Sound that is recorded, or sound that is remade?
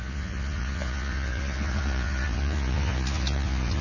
remade